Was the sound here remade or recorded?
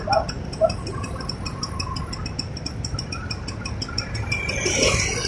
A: recorded